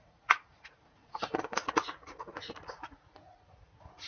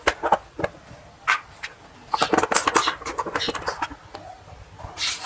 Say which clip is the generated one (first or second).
first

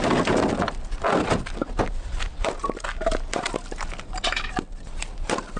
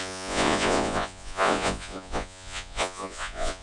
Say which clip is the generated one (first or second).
second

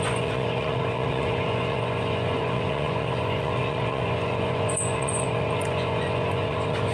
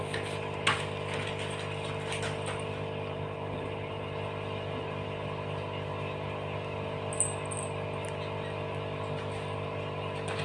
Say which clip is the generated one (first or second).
first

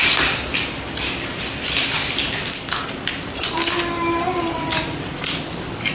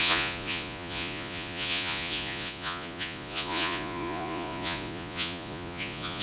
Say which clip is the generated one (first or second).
second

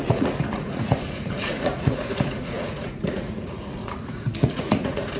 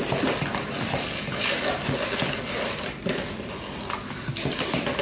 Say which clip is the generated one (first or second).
first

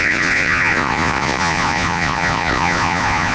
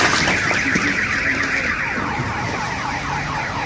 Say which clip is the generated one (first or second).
first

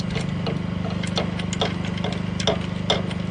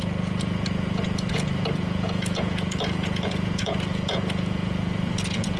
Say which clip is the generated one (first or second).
second